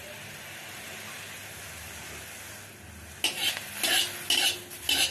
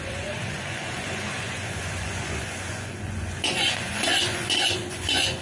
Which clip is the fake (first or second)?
second